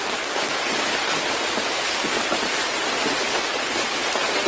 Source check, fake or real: real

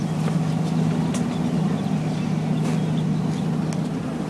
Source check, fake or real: real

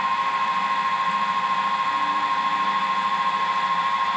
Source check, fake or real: fake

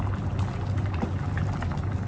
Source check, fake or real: real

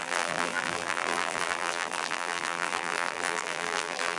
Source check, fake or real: fake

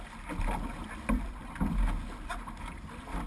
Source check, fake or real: real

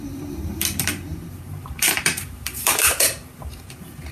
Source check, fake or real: fake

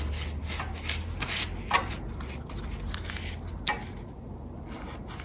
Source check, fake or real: real